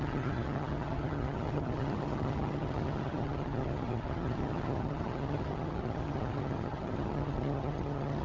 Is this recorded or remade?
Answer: remade